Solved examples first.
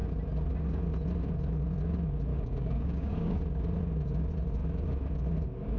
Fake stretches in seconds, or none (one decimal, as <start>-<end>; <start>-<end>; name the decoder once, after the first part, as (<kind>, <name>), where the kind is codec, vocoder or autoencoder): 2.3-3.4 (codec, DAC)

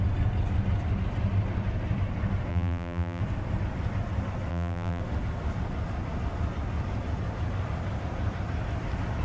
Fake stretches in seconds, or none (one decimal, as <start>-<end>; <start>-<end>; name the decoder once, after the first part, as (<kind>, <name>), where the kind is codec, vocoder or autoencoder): 2.5-3.2 (vocoder, BigVGAN v2); 4.5-5.0

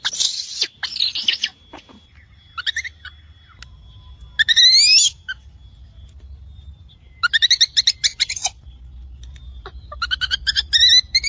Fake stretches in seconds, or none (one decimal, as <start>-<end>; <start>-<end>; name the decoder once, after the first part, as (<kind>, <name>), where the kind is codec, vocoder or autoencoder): none

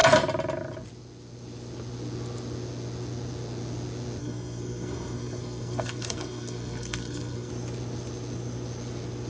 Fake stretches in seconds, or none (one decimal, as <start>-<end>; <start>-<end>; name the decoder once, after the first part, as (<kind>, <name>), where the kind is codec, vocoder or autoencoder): 4.2-7.5 (codec, SNAC)

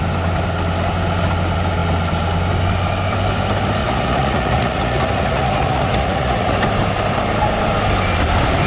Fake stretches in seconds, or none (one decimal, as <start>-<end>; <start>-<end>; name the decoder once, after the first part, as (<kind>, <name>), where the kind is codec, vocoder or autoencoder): 3.8-6.6 (vocoder, Vocos)

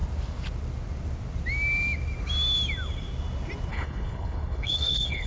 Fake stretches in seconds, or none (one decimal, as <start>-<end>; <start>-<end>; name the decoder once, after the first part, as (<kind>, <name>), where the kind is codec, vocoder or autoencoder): 3.7-5.3 (codec, HILCodec)

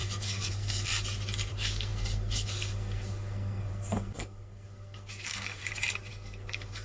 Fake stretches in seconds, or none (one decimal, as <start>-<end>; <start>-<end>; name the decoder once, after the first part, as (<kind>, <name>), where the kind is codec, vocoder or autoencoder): 0.0-0.9 (codec, SNAC); 1.5-5.6; 6.1-6.8

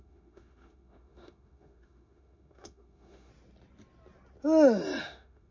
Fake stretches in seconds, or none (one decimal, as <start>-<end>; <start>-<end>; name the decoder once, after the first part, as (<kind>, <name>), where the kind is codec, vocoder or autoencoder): 0.0-3.3 (autoencoder, DAC-VAE); 5.0-5.5